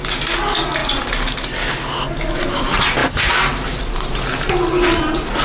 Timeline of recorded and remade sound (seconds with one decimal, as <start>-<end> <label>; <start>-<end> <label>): 0.0-5.4 recorded

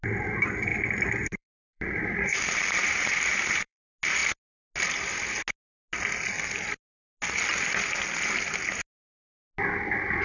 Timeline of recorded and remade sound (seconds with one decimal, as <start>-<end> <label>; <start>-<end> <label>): 0.0-0.7 recorded; 0.7-3.8 remade; 3.8-10.2 recorded

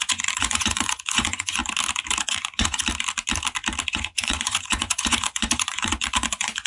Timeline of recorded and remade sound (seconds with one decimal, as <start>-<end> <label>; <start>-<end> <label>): 0.0-1.6 remade; 1.6-2.2 recorded; 2.2-2.8 remade; 2.8-3.9 recorded; 3.9-6.7 remade

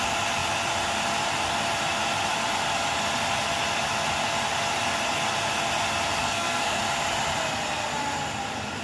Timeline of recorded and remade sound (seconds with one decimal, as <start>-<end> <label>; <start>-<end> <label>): 0.0-6.2 recorded; 6.2-6.8 remade; 6.8-8.8 recorded

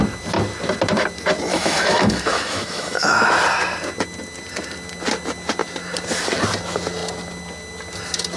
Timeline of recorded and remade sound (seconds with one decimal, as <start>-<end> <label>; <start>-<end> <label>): 0.0-1.5 recorded; 1.5-3.3 remade; 3.3-8.4 recorded